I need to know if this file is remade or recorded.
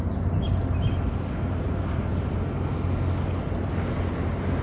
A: recorded